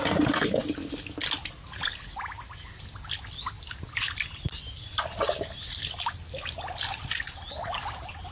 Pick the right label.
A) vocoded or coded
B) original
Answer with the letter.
B